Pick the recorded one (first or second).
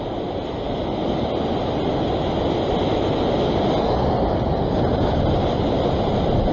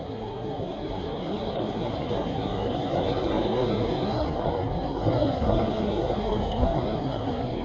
first